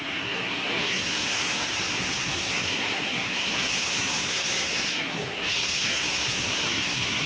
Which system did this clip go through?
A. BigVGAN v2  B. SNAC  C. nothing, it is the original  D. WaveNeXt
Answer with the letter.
B